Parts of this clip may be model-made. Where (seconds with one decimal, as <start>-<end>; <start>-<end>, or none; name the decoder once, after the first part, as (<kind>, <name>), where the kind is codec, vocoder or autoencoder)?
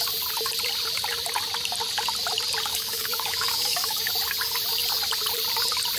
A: 2.7-4.1 (codec, DAC)